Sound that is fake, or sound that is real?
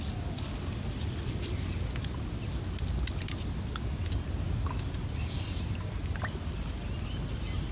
real